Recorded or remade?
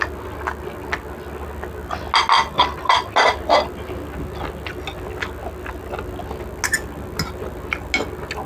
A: recorded